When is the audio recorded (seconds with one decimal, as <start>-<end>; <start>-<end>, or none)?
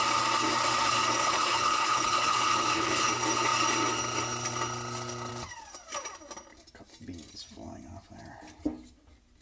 0.0-1.2; 3.1-9.4